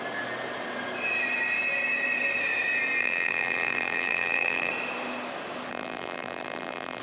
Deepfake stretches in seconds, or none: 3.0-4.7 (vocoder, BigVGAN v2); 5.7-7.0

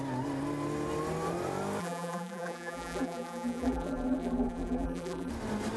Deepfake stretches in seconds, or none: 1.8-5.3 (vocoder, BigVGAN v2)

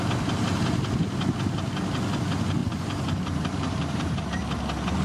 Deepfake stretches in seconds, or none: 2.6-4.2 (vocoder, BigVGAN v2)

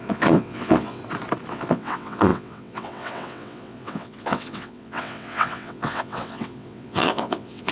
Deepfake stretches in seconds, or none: 0.0-1.0 (vocoder, WaveNeXt); 1.5-7.7